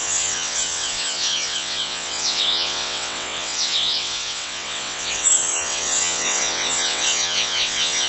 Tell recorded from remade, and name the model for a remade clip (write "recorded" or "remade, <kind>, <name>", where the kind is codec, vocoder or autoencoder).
remade, vocoder, WaveNeXt